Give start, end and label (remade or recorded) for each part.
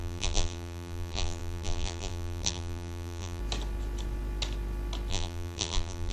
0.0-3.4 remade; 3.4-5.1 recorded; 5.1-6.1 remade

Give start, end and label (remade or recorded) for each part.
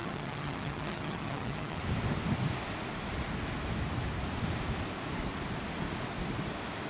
0.0-1.8 remade; 1.8-6.9 recorded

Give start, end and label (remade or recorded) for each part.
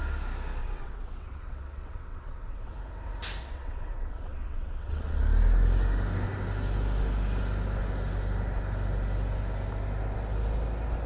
0.0-0.6 recorded; 0.6-2.7 remade; 2.7-3.4 recorded; 3.4-5.2 remade; 5.2-11.1 recorded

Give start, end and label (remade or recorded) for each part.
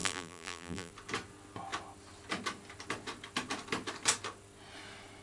0.0-0.9 remade; 0.9-5.2 recorded